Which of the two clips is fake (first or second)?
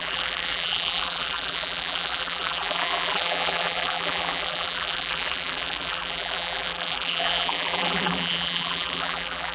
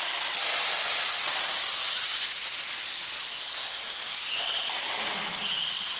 first